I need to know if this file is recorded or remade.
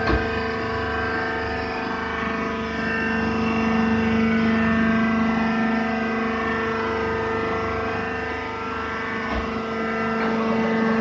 recorded